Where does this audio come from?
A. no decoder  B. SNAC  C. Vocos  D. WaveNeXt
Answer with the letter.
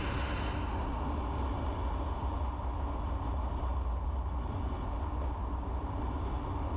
A